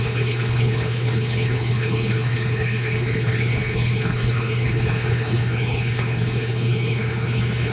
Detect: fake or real fake